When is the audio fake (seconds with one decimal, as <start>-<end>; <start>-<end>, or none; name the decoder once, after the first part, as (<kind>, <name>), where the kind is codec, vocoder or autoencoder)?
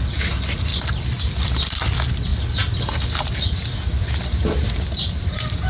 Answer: none